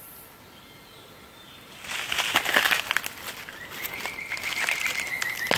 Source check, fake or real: real